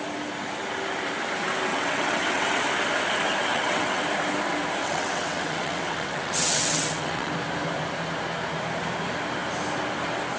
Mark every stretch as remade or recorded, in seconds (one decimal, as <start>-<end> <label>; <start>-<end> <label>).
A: 0.0-1.7 recorded; 1.7-2.6 remade; 2.6-3.5 recorded; 3.5-4.0 remade; 4.0-4.8 recorded; 4.8-7.3 remade; 7.3-10.4 recorded